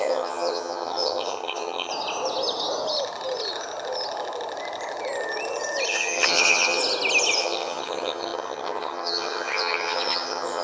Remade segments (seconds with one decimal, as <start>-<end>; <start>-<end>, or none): 0.0-1.9; 5.9-6.8; 7.4-10.6